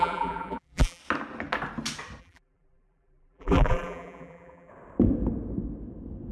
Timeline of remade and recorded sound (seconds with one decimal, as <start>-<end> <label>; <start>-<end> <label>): 0.0-1.0 remade; 1.0-2.2 recorded; 2.2-4.7 remade; 4.7-6.3 recorded